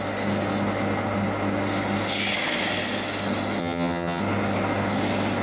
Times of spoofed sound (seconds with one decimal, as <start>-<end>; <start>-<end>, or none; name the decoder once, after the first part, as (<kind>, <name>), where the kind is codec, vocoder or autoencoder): 3.6-4.2 (vocoder, HiFi-GAN)